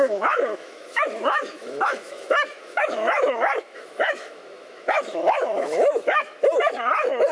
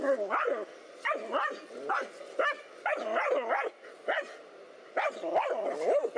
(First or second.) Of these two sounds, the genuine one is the second